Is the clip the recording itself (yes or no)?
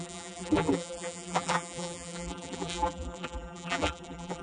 no